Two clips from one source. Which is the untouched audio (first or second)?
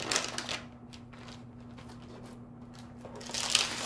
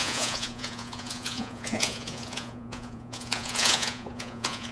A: first